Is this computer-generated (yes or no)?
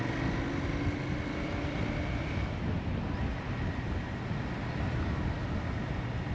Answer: no